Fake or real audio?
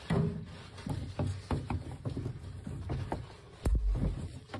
real